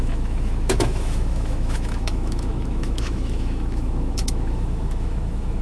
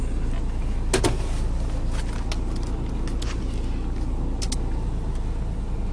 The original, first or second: second